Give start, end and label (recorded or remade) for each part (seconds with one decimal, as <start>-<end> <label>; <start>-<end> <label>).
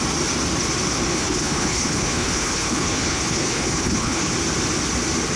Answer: 0.0-1.1 recorded; 1.1-4.3 remade; 4.3-5.4 recorded